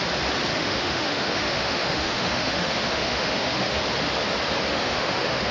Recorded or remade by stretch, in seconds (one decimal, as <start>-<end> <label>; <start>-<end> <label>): 0.0-0.5 recorded; 0.5-3.8 remade; 3.8-4.7 recorded; 4.7-5.5 remade